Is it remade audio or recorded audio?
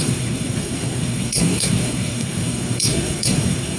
remade